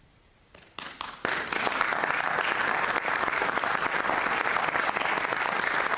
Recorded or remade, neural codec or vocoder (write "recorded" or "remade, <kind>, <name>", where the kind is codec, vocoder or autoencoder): recorded